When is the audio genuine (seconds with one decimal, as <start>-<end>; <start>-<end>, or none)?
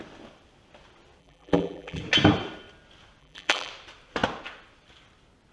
0.0-1.2; 2.0-3.2; 3.7-5.5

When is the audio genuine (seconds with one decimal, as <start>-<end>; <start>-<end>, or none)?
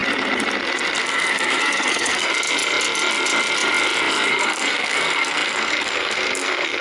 0.0-1.0; 2.3-4.3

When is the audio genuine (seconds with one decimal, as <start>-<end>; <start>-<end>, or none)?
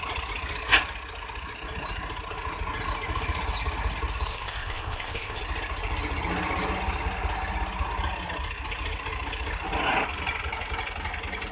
0.0-4.3; 5.4-11.5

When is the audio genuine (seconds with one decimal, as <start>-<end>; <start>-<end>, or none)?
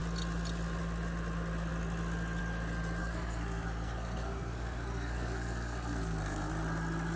0.0-3.0; 6.5-7.2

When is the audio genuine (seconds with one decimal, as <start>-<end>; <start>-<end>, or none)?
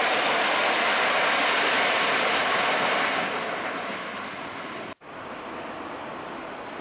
0.0-6.8